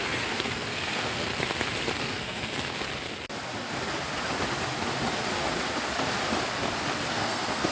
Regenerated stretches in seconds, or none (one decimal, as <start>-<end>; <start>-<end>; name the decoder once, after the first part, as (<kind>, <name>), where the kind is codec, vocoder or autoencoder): 0.0-1.3 (codec, SNAC); 2.0-2.5; 7.1-7.7